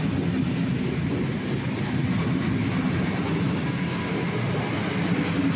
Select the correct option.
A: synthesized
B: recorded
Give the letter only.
B